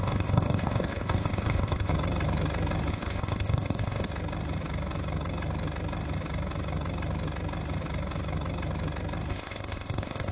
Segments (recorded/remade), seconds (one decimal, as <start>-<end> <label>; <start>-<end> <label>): 0.0-1.9 remade; 1.9-2.9 recorded; 2.9-4.1 remade; 4.1-9.3 recorded; 9.3-10.3 remade